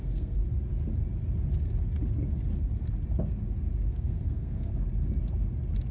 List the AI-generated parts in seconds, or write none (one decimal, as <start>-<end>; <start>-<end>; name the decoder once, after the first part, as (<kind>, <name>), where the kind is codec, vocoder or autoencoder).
0.0-0.4 (codec, SNAC); 3.9-4.7